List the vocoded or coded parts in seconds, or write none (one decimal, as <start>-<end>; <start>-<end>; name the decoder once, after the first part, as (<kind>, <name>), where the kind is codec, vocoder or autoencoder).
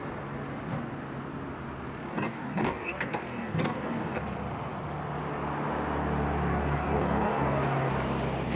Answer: 2.1-4.2 (codec, DAC); 6.5-7.9